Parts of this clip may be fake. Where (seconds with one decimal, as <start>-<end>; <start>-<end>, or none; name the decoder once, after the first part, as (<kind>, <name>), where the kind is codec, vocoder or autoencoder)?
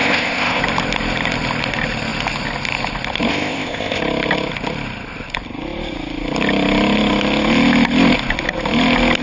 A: 0.0-0.6 (codec, ZipCodec); 3.3-4.0